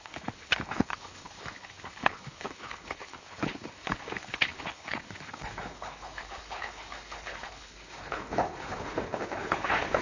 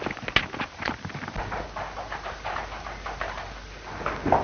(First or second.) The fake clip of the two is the first